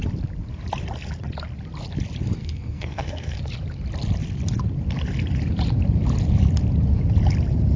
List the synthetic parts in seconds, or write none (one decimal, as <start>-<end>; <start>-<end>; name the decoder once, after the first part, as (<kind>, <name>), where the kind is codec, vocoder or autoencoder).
2.4-3.4 (codec, SNAC)